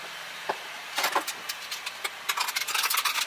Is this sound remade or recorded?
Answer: recorded